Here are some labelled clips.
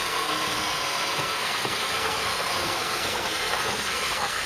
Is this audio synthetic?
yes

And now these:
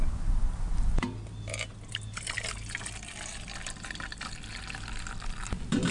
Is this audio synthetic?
no